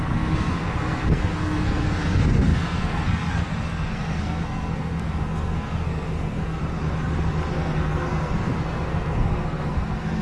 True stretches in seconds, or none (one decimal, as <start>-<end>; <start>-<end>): 6.6-7.5